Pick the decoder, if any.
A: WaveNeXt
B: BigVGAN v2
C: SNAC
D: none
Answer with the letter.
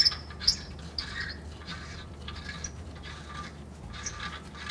D